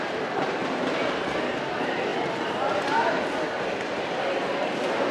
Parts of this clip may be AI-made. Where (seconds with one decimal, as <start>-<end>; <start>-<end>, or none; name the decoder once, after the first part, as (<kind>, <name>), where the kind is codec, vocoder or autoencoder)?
none